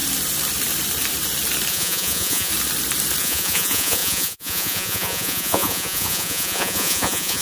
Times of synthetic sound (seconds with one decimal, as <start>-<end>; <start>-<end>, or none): 1.7-2.5; 3.2-7.4